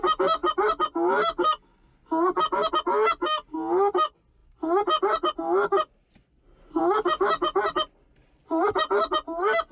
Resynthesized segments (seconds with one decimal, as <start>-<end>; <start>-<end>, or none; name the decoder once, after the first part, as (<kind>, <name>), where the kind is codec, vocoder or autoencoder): none